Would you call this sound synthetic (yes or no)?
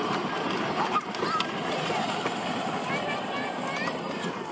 no